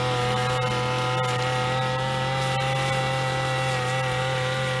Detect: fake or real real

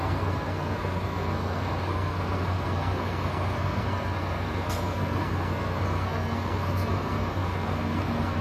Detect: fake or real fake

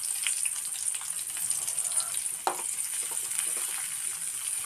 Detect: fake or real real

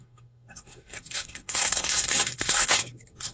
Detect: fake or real fake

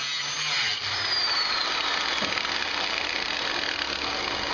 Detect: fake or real real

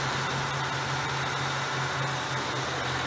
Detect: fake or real real